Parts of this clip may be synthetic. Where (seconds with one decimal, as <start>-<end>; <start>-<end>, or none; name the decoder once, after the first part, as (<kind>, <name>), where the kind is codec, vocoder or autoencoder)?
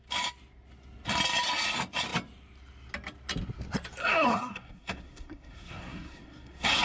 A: 4.0-6.8 (codec, SNAC)